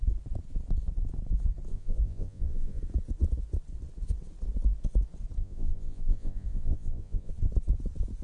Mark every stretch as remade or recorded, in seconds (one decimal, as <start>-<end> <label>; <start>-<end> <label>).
0.0-1.7 recorded; 1.7-2.8 remade; 2.8-5.4 recorded; 5.4-7.3 remade; 7.3-8.2 recorded